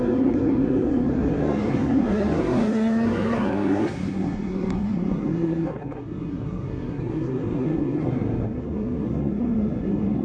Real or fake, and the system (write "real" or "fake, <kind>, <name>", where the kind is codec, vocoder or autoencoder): fake, codec, SNAC